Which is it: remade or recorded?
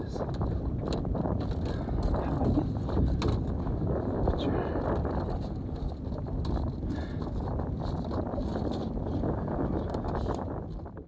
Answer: recorded